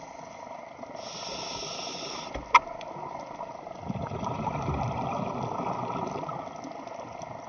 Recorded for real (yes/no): yes